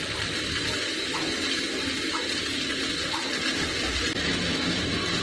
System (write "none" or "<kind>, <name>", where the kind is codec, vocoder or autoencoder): none